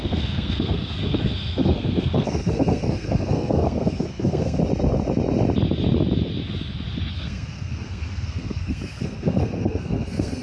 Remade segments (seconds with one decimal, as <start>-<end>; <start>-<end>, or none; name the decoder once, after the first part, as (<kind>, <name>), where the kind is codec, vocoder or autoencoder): 0.0-4.6 (codec, SNAC); 7.1-10.4